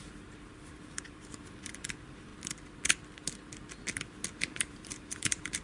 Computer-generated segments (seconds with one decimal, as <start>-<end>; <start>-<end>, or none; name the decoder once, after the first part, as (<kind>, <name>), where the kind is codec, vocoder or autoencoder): 0.0-2.3 (vocoder, BigVGAN v2); 4.4-5.6